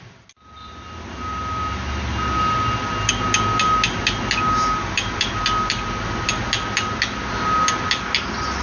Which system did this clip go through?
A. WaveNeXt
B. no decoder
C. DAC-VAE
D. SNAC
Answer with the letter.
B